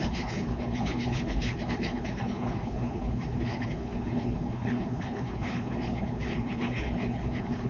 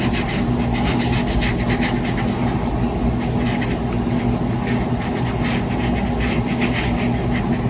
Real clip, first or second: second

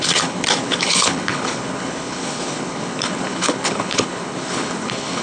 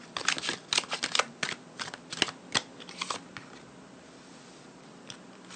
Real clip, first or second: second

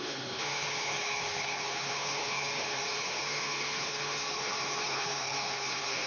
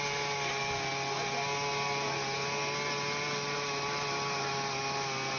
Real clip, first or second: second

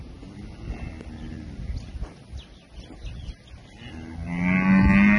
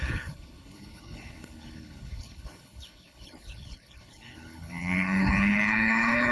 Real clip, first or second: first